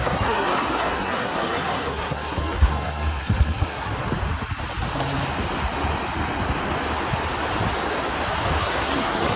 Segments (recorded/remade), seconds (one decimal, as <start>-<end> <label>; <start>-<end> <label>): 0.0-3.9 remade; 3.9-8.6 recorded; 8.6-9.4 remade

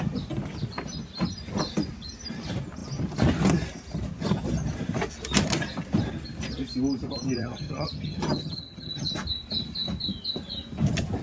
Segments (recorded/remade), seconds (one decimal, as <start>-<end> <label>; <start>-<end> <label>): 0.0-7.4 recorded; 7.4-9.1 remade; 9.1-11.2 recorded

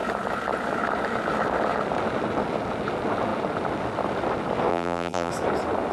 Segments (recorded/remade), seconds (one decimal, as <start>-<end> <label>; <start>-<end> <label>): 0.0-4.7 recorded; 4.7-5.3 remade; 5.3-5.9 recorded

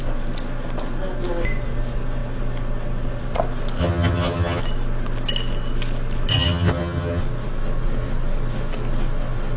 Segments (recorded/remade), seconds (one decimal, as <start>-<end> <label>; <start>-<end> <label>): 0.0-3.8 recorded; 3.8-4.6 remade; 4.6-6.3 recorded; 6.3-7.2 remade; 7.2-9.6 recorded

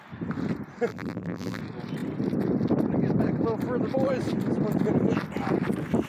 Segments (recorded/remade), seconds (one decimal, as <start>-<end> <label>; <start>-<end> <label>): 0.0-0.9 recorded; 0.9-1.6 remade; 1.6-6.1 recorded

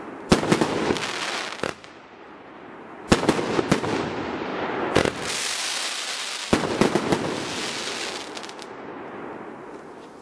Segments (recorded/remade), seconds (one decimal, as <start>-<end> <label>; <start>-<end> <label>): 0.0-10.2 recorded